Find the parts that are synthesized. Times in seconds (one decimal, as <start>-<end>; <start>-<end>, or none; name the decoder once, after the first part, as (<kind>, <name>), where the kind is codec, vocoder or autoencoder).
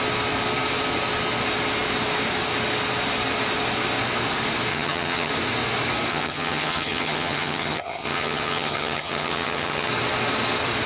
4.7-5.3 (vocoder, HiFi-GAN); 6.1-9.9